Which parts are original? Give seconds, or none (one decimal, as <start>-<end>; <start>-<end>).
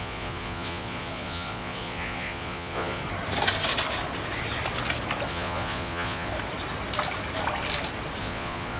3.0-5.3; 6.3-8.2